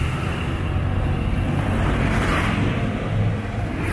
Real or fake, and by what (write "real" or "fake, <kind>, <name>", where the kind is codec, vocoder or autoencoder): real